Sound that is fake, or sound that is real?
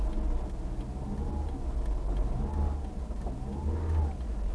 real